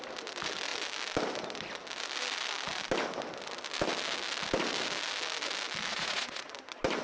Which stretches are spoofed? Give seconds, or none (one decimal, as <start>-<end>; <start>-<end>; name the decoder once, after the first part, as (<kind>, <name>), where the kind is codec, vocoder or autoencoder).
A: 5.9-6.5 (vocoder, Vocos)